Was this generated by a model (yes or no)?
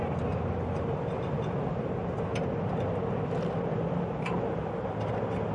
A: no